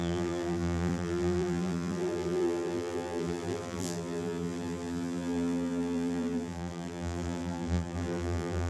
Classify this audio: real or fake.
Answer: fake